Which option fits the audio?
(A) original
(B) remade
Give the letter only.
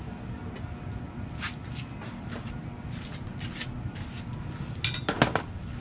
A